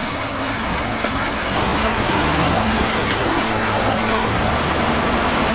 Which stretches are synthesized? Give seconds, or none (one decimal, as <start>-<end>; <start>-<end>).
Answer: 0.0-4.5